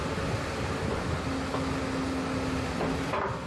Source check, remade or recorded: recorded